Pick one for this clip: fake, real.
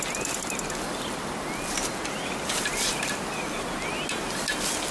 real